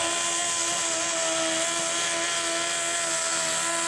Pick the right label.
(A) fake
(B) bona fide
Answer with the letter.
B